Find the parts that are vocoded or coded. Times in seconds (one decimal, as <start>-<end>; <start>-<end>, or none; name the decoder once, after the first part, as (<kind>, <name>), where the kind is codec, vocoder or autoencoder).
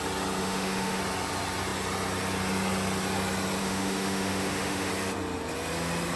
0.4-1.0 (autoencoder, DAC-VAE); 3.6-4.9